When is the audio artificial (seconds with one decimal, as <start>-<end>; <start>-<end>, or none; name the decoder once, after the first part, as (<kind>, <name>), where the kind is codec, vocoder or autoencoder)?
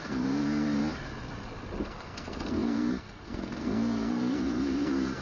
0.0-0.8 (codec, SNAC); 1.8-5.2